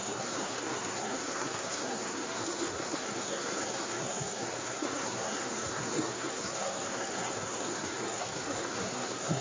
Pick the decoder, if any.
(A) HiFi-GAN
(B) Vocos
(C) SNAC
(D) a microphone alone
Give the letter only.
C